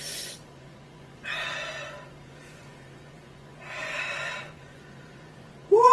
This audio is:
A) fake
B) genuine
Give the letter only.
A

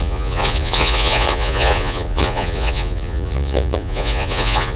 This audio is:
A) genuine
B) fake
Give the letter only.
B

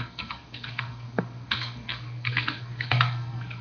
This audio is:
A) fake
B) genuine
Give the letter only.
A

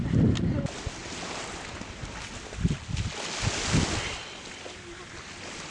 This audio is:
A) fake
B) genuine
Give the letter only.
B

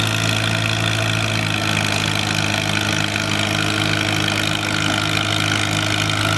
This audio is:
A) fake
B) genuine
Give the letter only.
B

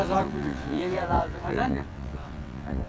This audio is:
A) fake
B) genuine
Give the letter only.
A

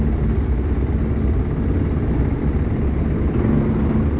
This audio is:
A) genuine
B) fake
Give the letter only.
A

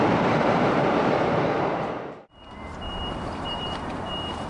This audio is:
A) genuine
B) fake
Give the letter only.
B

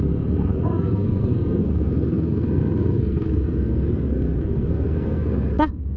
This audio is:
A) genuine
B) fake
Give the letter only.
B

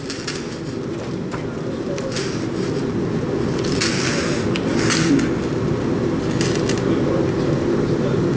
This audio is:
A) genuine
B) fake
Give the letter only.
A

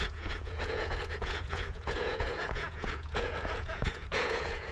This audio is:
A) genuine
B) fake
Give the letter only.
B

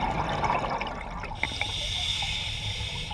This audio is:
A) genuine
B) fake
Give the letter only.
A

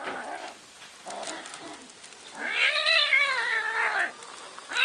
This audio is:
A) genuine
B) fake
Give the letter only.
A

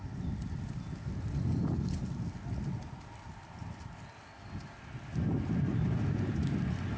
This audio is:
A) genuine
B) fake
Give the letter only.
A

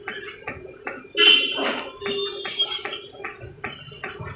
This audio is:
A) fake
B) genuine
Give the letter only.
B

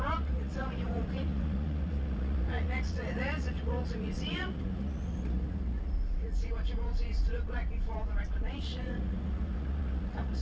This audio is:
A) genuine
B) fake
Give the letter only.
B